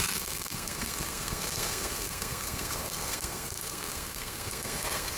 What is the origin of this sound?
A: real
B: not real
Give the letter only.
B